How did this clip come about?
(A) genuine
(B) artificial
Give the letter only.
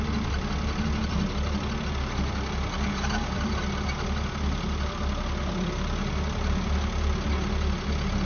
A